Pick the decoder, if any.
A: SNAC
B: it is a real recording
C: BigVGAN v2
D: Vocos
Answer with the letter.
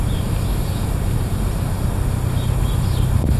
B